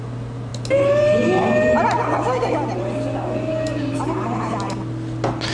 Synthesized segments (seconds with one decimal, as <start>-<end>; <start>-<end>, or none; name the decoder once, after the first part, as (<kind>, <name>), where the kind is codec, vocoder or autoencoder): none

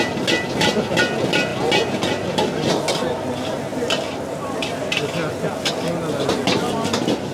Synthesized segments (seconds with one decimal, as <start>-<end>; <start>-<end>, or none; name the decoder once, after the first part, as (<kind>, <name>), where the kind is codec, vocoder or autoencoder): 3.7-5.7 (vocoder, BigVGAN v2)

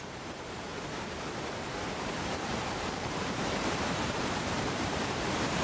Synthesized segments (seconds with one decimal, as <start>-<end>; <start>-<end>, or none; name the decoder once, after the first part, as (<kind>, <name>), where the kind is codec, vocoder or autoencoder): 0.0-0.7 (vocoder, BigVGAN v2); 2.2-5.6

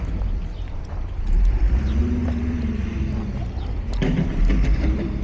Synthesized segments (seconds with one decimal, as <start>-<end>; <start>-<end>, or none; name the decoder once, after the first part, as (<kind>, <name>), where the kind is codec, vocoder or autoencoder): 0.0-5.2 (vocoder, BigVGAN v2)